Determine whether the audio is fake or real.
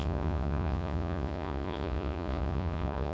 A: fake